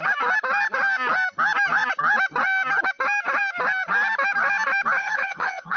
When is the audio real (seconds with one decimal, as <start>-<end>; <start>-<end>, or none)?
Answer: 0.0-5.0